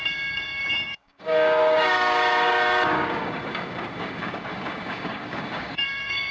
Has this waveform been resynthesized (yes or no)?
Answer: yes